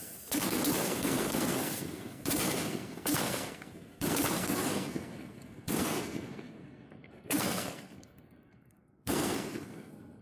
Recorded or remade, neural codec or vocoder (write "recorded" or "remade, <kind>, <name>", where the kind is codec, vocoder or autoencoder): remade, codec, SNAC